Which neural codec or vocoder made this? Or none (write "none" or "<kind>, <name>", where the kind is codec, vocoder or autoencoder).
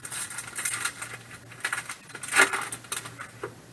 none